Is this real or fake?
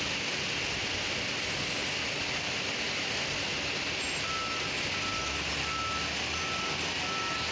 real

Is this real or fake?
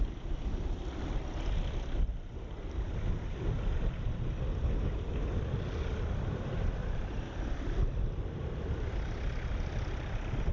real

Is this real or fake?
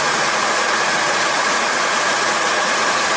fake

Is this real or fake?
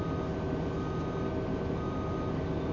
real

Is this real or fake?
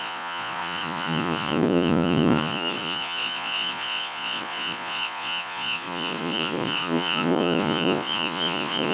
fake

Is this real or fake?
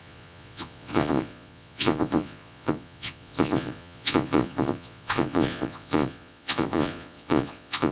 fake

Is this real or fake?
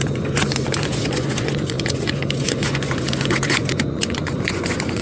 fake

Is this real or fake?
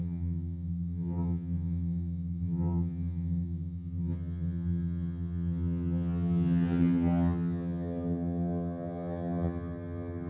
fake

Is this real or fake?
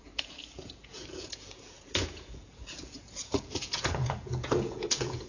fake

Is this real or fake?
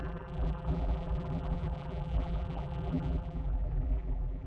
fake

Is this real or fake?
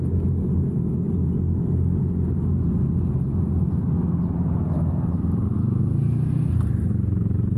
real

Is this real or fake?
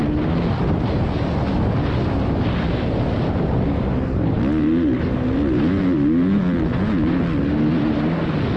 real